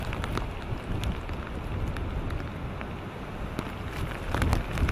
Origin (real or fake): real